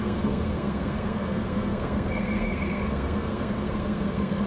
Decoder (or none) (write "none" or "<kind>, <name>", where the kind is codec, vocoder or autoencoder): codec, SNAC